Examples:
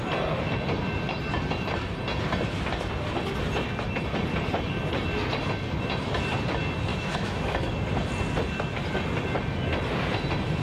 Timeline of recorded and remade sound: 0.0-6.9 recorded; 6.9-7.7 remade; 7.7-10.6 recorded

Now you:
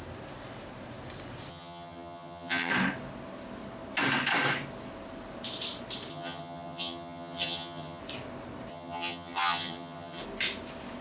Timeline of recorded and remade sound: 0.0-1.5 recorded; 1.5-2.7 remade; 2.7-6.1 recorded; 6.1-8.0 remade; 8.0-8.7 recorded; 8.7-10.2 remade; 10.2-11.0 recorded

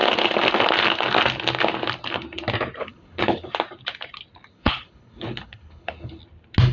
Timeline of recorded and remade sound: 0.0-2.8 recorded; 2.8-3.5 remade; 3.5-4.5 recorded; 4.5-6.2 remade; 6.2-6.7 recorded